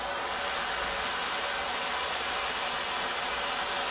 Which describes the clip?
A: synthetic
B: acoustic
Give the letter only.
B